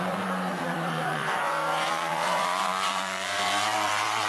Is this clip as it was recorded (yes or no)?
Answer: no